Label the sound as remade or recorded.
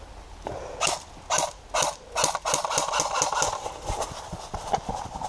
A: recorded